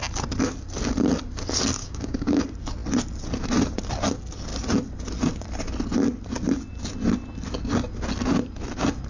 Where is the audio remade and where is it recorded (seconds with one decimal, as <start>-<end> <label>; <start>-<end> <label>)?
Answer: 0.0-1.8 recorded; 1.8-2.4 remade; 2.4-9.1 recorded